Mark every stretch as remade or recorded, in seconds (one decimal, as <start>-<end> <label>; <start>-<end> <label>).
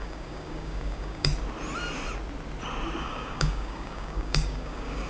0.0-1.3 remade; 1.3-3.0 recorded; 3.0-5.1 remade